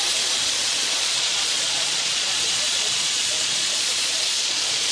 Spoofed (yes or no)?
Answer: yes